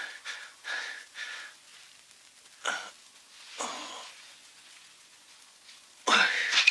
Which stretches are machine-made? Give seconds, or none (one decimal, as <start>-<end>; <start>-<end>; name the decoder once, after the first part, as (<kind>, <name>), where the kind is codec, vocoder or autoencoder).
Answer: 0.0-1.7 (vocoder, Vocos); 3.0-6.7